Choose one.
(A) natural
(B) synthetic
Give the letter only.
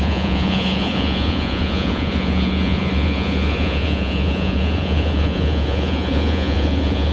B